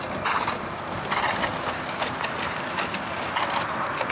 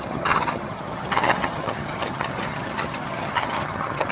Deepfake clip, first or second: second